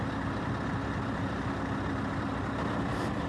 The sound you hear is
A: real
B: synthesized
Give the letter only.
A